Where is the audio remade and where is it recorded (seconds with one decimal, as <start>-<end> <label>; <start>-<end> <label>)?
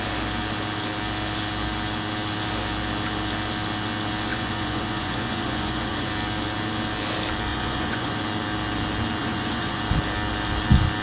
0.0-4.3 recorded; 4.3-6.1 remade; 6.1-7.5 recorded; 7.5-8.2 remade; 8.2-9.2 recorded; 9.2-9.8 remade; 9.8-11.0 recorded